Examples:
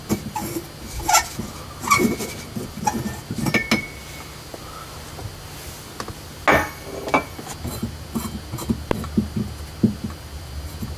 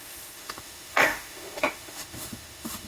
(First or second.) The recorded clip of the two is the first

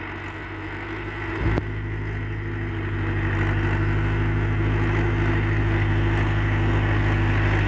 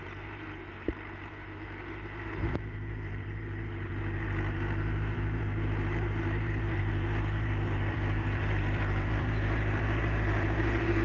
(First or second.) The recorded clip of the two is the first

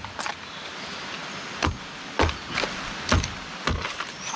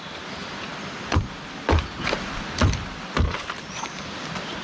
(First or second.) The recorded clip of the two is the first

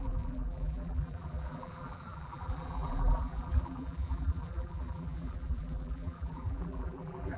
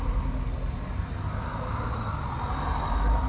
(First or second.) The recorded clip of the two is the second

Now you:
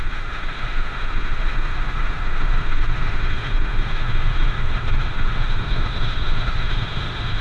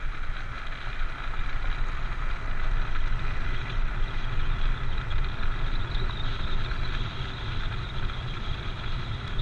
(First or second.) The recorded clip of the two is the second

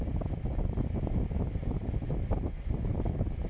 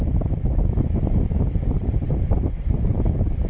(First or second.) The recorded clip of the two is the first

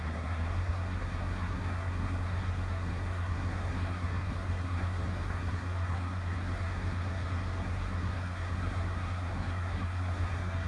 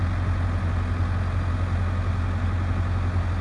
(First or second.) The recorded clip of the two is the second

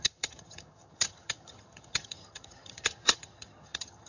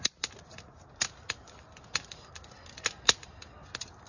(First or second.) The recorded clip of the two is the second